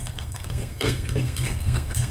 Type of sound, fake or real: fake